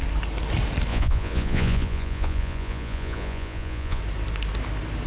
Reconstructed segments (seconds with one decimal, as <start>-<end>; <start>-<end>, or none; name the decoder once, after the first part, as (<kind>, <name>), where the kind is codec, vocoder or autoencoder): 0.9-4.0 (vocoder, Vocos)